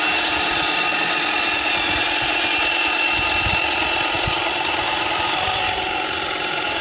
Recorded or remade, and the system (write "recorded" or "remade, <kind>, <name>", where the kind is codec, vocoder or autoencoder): recorded